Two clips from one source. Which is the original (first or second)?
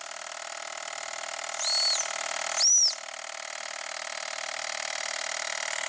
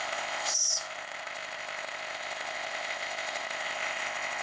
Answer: first